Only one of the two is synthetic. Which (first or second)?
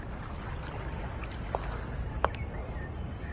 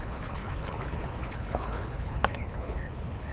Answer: second